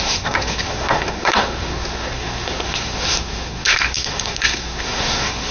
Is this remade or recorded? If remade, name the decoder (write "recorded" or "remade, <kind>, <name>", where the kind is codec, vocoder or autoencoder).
remade, codec, SNAC